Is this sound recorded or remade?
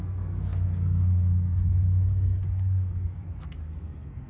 remade